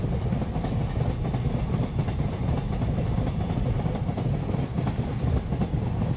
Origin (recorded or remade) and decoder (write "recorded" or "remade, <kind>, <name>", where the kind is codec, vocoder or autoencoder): recorded